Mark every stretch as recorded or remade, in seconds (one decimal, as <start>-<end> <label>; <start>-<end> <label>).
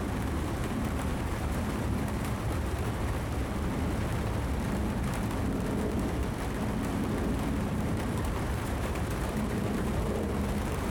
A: 0.0-3.4 remade; 3.4-7.6 recorded; 7.6-10.9 remade